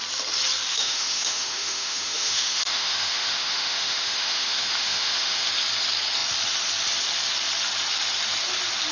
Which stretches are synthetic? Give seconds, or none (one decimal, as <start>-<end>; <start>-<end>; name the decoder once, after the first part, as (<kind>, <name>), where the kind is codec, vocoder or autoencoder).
0.7-5.5 (autoencoder, DAC-VAE)